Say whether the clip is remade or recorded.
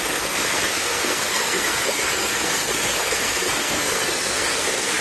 remade